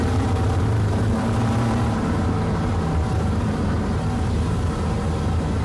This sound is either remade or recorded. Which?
remade